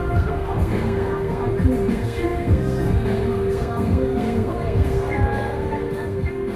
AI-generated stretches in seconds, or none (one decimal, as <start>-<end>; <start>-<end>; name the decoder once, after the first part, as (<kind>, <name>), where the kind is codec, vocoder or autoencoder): 0.0-1.4 (codec, SNAC); 1.9-6.6